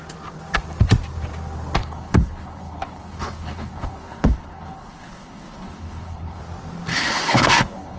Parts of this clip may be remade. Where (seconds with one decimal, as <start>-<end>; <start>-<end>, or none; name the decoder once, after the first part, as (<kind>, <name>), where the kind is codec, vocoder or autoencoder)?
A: 1.8-6.4 (codec, HILCodec); 6.9-8.0